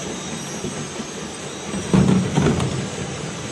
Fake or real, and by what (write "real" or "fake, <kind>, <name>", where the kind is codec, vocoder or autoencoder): real